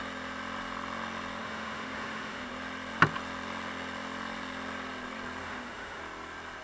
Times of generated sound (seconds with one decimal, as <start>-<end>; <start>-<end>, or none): 1.4-2.5; 5.4-6.0